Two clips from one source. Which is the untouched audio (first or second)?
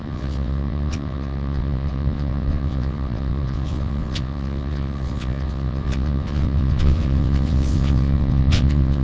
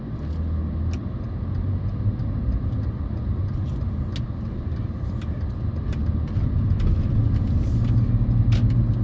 second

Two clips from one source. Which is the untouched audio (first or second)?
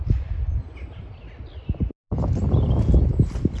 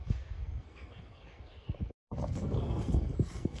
first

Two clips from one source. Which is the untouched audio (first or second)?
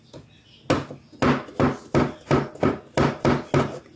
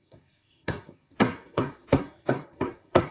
first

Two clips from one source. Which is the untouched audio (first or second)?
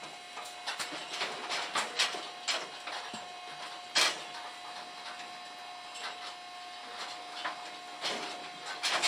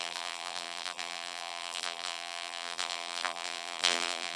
first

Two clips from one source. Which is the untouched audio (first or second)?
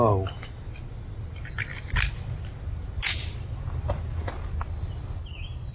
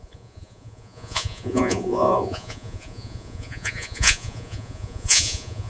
first